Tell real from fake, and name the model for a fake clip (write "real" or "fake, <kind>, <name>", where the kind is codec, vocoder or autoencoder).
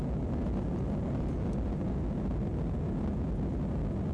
real